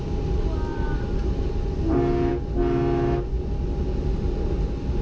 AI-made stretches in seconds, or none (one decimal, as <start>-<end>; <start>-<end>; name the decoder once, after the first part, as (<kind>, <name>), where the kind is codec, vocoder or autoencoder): 0.7-1.4 (vocoder, BigVGAN v2)